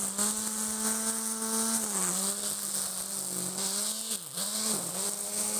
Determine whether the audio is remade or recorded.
recorded